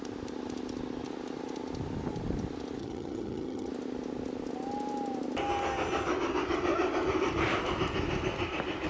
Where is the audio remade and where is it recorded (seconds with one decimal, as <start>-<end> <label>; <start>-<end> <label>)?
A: 0.0-2.8 recorded; 2.8-3.7 remade; 3.7-8.9 recorded